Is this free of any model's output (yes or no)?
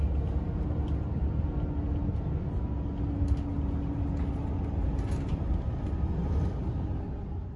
yes